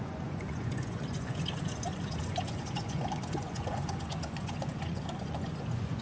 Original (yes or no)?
no